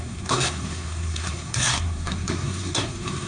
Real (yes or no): no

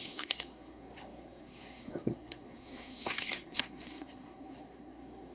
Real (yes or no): no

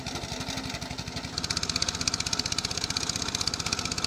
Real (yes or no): yes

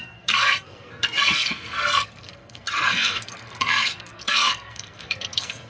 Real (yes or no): no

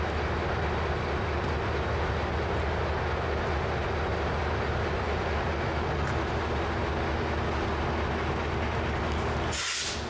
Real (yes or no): yes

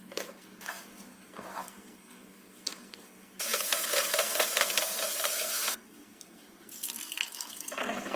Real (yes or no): no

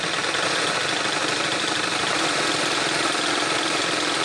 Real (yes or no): yes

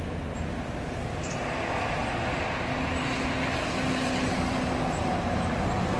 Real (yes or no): yes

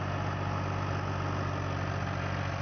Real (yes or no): yes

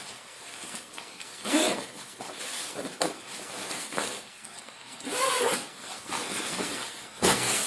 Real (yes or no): no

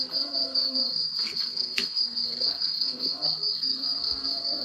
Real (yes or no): no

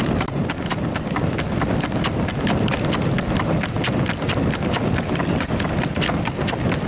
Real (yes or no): yes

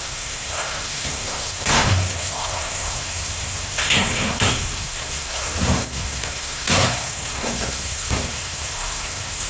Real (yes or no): no